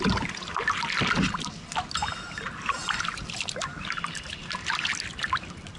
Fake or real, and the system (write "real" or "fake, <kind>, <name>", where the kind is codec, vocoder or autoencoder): real